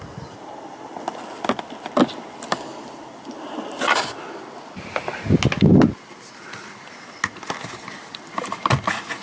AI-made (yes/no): no